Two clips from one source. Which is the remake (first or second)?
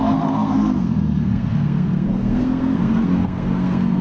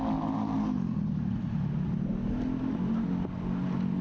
first